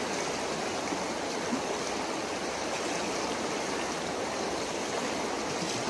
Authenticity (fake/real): real